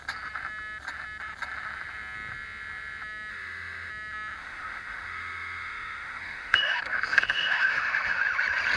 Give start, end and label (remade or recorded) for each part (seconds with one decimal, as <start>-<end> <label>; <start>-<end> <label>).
0.0-3.3 recorded; 3.3-3.9 remade; 3.9-4.4 recorded; 4.4-8.2 remade; 8.2-8.8 recorded